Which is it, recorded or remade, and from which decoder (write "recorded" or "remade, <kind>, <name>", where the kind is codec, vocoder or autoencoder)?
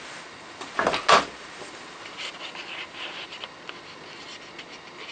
recorded